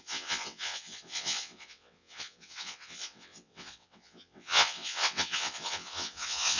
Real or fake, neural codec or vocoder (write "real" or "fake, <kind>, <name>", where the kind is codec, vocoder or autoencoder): fake, vocoder, WaveNeXt